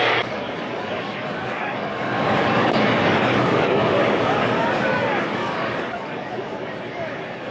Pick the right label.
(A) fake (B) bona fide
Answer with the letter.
A